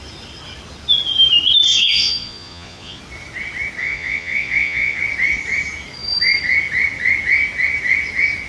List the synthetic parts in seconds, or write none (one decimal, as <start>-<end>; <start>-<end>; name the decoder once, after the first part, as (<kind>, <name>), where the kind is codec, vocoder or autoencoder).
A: 1.7-3.0 (vocoder, Vocos); 3.8-5.0